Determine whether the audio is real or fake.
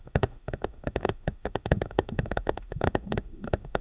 fake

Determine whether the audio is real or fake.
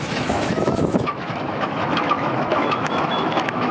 fake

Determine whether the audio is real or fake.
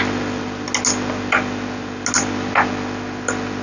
real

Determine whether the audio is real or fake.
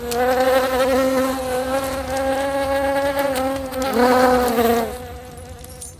real